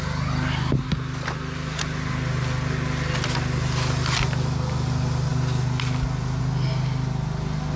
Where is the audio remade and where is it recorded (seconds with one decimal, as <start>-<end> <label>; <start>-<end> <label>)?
0.0-7.8 recorded